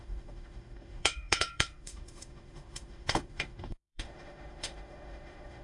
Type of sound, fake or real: fake